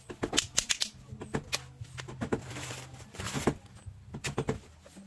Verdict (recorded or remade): recorded